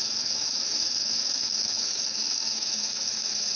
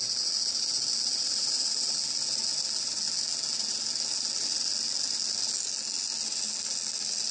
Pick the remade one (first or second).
first